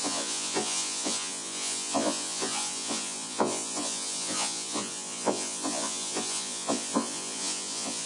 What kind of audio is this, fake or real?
fake